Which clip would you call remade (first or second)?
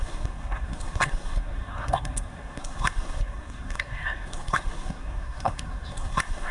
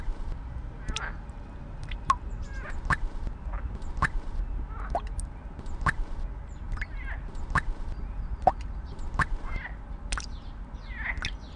first